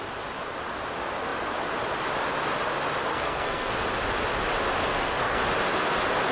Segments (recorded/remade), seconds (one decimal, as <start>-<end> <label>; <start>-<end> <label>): 0.0-3.1 recorded; 3.1-3.7 remade; 3.7-4.8 recorded; 4.8-5.4 remade; 5.4-6.3 recorded

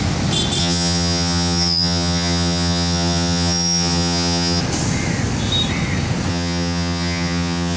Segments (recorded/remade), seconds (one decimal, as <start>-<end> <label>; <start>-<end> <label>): 0.0-0.6 recorded; 0.6-4.6 remade; 4.6-6.3 recorded; 6.3-7.8 remade

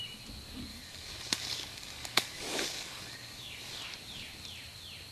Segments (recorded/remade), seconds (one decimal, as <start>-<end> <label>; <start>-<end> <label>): 0.0-0.7 recorded; 0.7-3.8 remade; 3.8-5.1 recorded

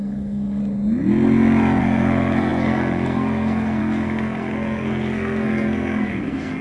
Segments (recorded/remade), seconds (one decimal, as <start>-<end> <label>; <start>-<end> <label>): 0.0-0.6 remade; 0.6-1.8 recorded; 1.8-6.6 remade

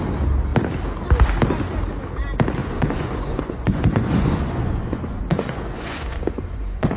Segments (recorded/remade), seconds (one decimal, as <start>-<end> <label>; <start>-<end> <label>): 0.0-2.6 recorded; 2.6-7.0 remade

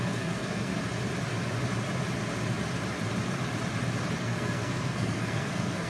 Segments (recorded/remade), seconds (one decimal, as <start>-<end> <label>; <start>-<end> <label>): 0.0-0.7 remade; 0.7-4.2 recorded; 4.2-5.9 remade

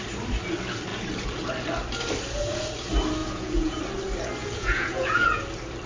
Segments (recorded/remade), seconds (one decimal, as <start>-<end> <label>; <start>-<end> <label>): 0.0-3.2 recorded; 3.2-3.8 remade; 3.8-4.4 recorded; 4.4-5.4 remade; 5.4-5.9 recorded